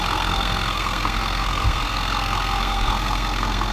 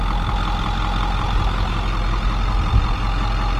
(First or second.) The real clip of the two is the second